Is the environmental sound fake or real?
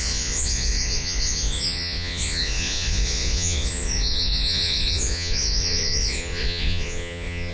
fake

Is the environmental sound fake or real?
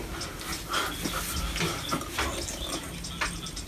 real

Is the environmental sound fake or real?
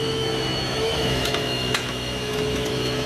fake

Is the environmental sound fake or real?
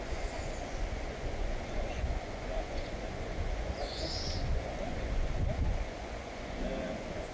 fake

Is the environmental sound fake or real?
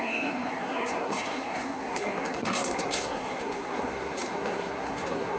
fake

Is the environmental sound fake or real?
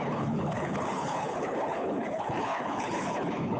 fake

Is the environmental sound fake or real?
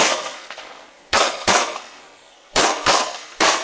fake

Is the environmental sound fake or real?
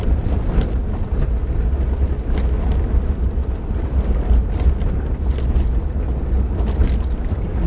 real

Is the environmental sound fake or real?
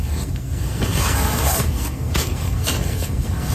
fake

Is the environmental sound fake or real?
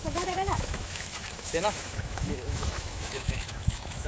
fake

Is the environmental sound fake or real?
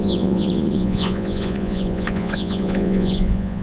fake